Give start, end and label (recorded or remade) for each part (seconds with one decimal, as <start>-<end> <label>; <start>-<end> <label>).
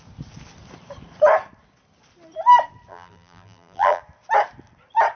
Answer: 0.0-2.9 recorded; 2.9-4.0 remade; 4.0-5.2 recorded